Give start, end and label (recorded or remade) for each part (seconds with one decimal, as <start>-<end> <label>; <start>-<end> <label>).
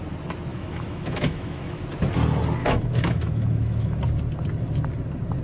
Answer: 0.0-0.5 recorded; 0.5-1.8 remade; 1.8-2.6 recorded; 2.6-4.0 remade; 4.0-5.4 recorded